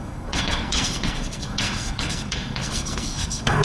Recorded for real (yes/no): no